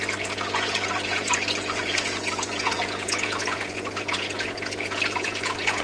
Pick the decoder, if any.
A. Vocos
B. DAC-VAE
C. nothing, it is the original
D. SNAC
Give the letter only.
A